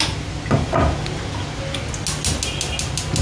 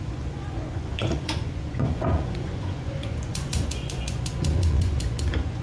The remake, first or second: second